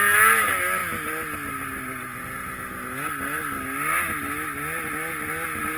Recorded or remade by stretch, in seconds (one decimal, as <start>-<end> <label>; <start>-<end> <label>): 0.0-5.8 recorded